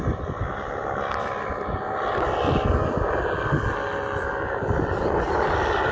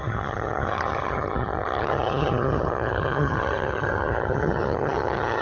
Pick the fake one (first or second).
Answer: second